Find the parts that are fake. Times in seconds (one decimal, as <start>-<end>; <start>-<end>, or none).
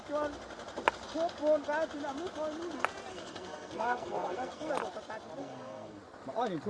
3.1-4.7; 5.4-6.0